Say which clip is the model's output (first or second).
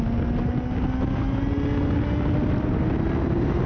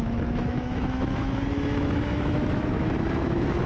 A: second